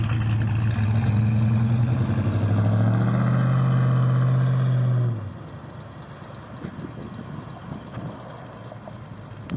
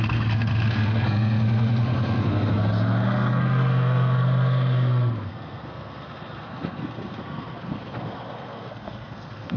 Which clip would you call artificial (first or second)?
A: second